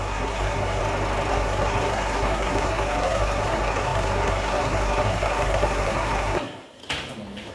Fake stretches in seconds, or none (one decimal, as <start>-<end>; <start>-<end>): 0.0-0.8; 1.3-6.8